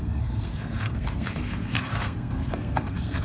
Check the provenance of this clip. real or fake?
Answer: fake